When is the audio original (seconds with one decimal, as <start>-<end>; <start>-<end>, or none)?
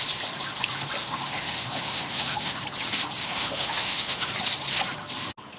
0.0-1.0; 2.6-3.2; 4.3-5.6